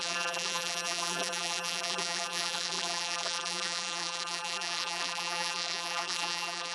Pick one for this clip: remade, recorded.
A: remade